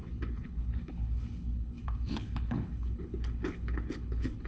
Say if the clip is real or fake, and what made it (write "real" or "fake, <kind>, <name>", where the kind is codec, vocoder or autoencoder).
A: fake, codec, HILCodec